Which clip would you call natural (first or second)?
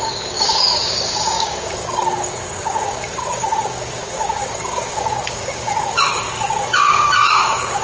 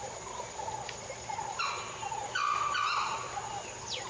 second